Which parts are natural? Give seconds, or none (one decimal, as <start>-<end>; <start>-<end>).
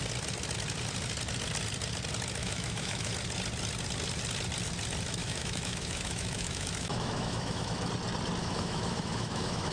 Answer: 0.0-2.4; 3.1-5.2; 7.9-8.4